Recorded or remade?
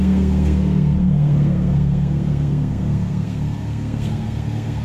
remade